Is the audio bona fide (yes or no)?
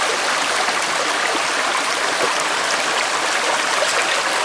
yes